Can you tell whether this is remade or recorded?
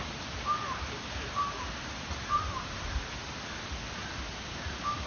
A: recorded